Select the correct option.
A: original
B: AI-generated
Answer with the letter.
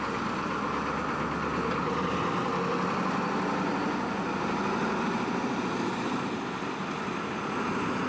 A